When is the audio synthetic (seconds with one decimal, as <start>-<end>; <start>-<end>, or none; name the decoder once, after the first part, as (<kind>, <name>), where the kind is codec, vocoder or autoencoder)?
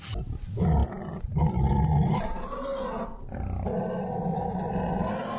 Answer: none